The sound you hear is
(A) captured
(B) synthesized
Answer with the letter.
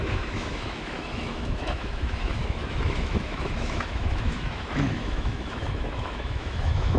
B